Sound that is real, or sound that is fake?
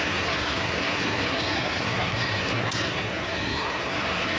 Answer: fake